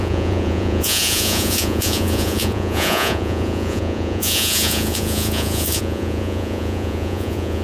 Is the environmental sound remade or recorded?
remade